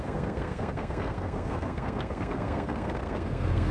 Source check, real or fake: fake